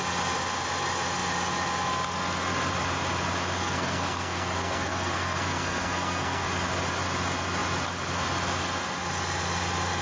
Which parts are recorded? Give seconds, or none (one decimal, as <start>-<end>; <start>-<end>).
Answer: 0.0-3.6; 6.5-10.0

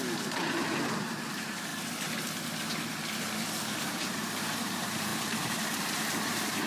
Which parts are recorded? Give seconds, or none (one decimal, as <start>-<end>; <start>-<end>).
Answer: 1.7-4.0

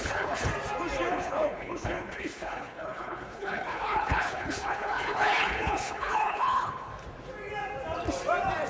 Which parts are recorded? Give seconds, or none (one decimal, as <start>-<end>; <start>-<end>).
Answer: 0.5-1.1; 6.9-8.7

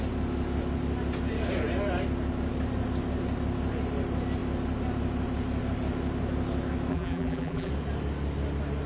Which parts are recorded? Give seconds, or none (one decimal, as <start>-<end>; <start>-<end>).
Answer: 0.0-6.9; 7.7-8.9

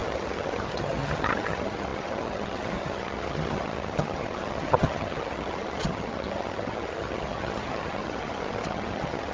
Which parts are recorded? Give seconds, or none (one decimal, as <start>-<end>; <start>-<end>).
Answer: none